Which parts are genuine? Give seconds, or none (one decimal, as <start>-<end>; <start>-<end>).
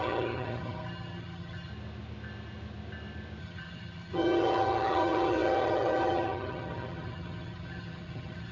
1.7-3.4